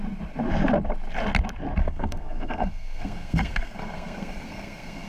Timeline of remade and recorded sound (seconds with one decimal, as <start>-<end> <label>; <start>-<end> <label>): 0.0-1.8 recorded; 1.8-5.1 remade